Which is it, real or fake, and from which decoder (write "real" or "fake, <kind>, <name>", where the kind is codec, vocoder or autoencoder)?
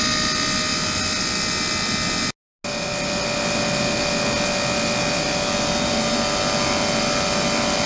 real